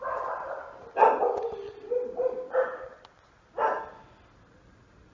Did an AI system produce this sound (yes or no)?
no